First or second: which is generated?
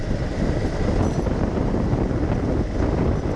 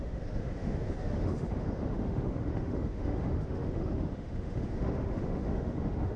second